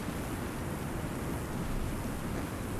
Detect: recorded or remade recorded